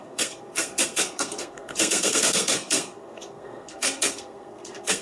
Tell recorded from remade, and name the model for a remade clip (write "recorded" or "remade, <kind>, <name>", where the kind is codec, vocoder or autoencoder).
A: remade, codec, SNAC